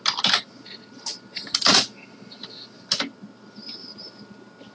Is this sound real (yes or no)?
yes